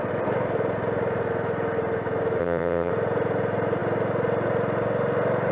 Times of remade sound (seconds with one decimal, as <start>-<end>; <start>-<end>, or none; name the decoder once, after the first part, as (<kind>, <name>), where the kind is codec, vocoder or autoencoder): 2.4-2.9 (vocoder, HiFi-GAN)

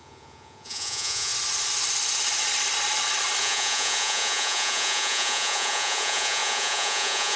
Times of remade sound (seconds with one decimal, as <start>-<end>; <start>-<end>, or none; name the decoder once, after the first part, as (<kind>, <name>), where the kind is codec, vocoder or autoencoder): 0.0-1.3 (vocoder, Vocos); 3.4-7.4

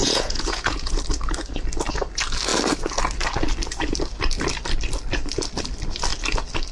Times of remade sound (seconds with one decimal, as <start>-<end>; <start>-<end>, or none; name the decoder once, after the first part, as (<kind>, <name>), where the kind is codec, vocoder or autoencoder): 0.0-1.0 (vocoder, Vocos)

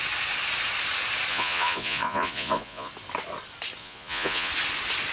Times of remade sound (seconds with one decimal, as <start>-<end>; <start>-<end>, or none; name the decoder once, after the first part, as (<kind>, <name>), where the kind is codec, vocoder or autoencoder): 1.3-2.9 (vocoder, Vocos); 3.8-4.5

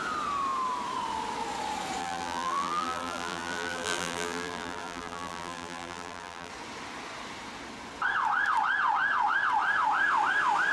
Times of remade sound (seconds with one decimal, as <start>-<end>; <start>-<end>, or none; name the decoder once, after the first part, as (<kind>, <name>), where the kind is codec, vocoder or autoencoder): 2.0-6.5 (vocoder, BigVGAN v2)